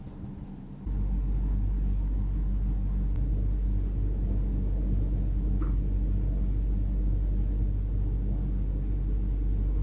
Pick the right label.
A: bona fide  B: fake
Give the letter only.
A